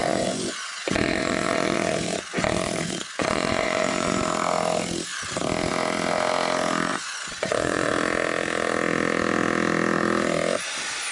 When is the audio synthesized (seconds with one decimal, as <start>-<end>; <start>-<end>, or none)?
0.0-4.2; 6.9-7.9